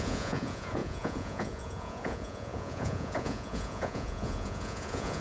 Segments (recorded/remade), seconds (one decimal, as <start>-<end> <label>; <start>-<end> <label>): 0.0-5.2 remade